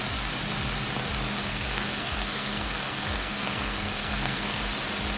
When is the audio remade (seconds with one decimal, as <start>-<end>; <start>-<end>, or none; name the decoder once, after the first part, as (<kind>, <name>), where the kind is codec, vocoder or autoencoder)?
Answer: 1.5-4.6 (codec, SNAC)